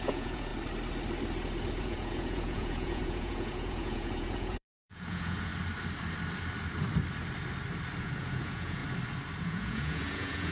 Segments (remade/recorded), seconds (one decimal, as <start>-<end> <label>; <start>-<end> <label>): 0.0-0.5 remade; 0.5-1.8 recorded; 1.8-5.5 remade; 5.5-8.0 recorded; 8.0-8.8 remade; 8.8-9.4 recorded; 9.4-10.5 remade